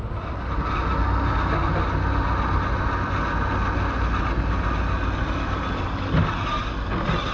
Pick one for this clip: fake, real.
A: real